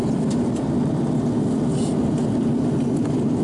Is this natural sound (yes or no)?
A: yes